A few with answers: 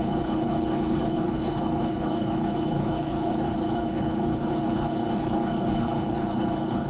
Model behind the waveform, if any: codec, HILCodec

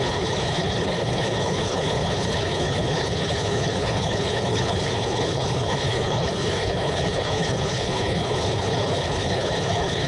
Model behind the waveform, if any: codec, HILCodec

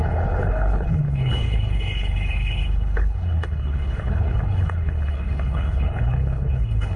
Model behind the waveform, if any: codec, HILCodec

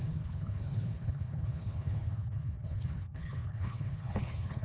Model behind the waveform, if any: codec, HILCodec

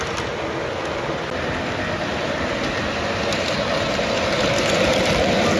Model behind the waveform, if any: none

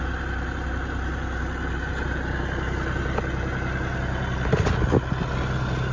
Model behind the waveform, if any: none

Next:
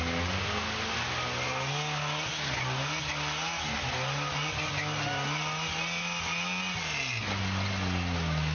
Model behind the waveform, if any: none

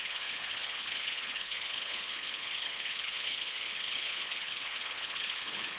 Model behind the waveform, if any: codec, HILCodec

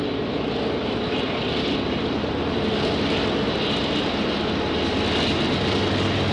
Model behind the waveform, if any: none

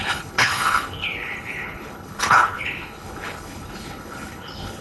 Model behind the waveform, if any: codec, HILCodec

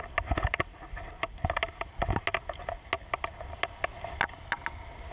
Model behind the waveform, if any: none